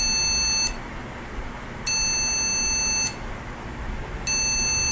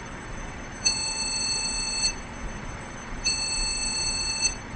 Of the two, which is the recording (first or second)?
first